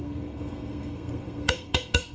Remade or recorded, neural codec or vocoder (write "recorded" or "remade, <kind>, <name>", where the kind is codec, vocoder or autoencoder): remade, codec, SNAC